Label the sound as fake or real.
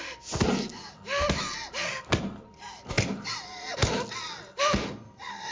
real